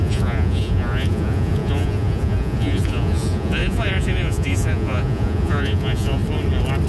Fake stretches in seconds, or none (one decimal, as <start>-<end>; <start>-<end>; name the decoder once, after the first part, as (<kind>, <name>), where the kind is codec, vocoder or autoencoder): 0.0-6.2 (vocoder, Vocos)